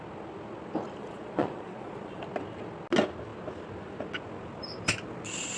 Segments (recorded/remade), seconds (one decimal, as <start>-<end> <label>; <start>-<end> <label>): 0.0-1.0 recorded; 1.0-2.2 remade; 2.2-5.6 recorded